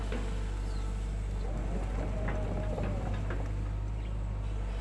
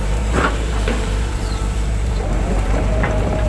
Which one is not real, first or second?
second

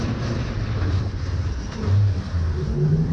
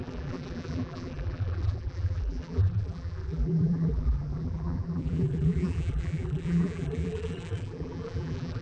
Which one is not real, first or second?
second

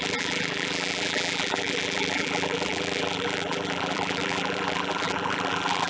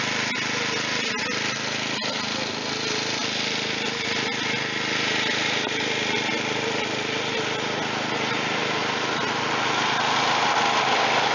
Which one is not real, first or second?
first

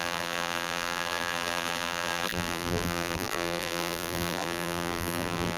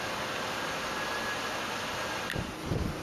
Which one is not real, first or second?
first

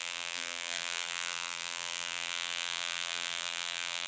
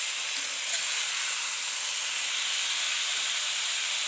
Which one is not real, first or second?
first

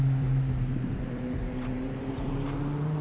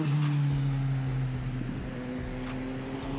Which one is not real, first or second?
first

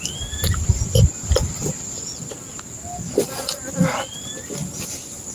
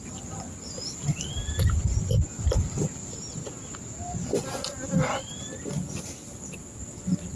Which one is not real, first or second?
first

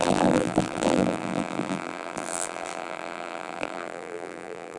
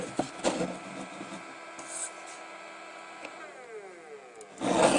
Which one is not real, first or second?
first